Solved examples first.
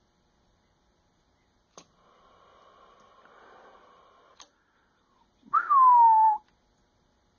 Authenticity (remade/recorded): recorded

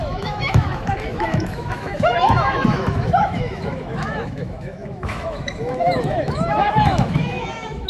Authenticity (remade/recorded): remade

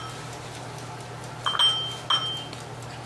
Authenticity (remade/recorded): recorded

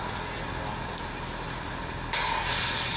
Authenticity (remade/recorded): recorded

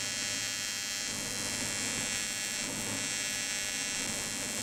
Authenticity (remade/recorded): recorded